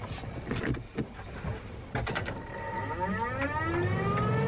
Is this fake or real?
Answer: real